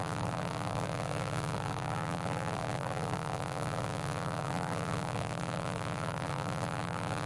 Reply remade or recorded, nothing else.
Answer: remade